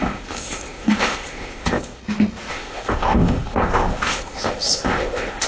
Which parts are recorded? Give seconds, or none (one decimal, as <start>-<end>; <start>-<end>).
2.0-2.5